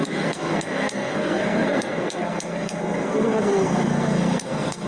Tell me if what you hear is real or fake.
fake